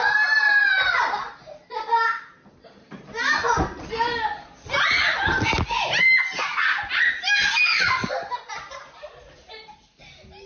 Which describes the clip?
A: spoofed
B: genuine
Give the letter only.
B